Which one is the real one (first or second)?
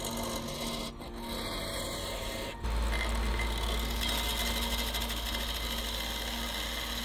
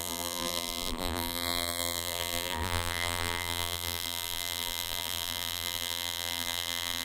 first